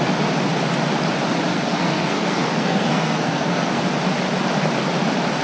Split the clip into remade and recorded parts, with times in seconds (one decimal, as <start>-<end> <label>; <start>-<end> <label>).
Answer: 0.0-1.5 recorded; 1.5-3.8 remade; 3.8-5.4 recorded